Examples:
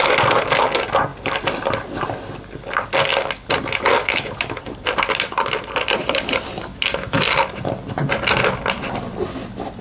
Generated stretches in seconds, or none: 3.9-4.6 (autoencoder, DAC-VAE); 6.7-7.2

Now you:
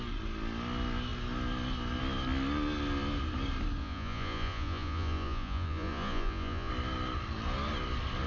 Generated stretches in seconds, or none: 3.8-6.7 (vocoder, Vocos)

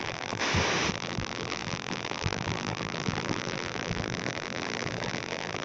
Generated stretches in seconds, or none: 0.0-0.4 (vocoder, BigVGAN v2); 0.9-5.6

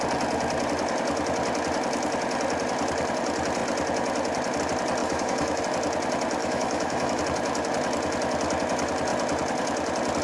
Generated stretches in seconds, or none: 5.0-5.6 (autoencoder, DAC-VAE); 6.4-7.2